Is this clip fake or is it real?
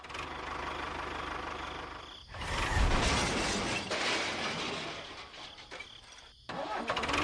real